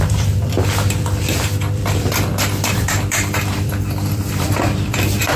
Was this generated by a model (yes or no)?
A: yes